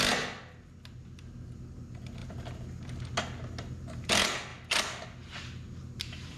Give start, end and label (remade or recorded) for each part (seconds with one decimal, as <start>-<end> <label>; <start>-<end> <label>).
0.0-6.4 recorded